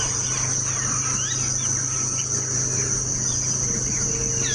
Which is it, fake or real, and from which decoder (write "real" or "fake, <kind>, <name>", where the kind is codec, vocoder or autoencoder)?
real